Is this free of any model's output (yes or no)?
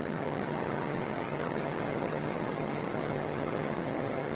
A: no